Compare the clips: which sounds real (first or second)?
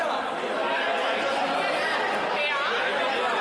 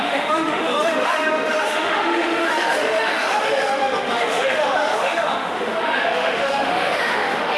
first